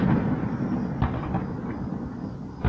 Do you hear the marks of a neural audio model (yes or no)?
no